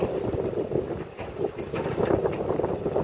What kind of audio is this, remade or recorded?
recorded